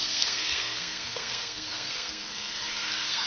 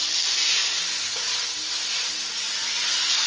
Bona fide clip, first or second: second